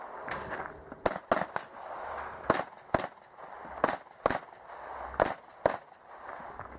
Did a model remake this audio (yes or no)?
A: no